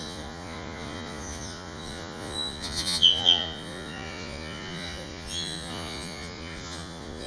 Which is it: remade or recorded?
remade